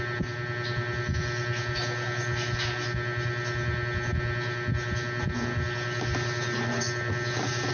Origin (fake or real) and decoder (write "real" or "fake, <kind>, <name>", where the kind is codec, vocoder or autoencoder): real